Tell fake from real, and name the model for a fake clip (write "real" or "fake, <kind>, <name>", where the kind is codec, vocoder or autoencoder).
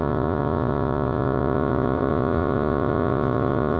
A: fake, vocoder, Vocos